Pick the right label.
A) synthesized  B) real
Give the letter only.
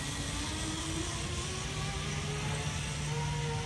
B